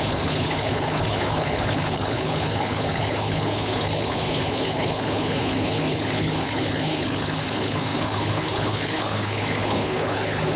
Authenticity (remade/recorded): remade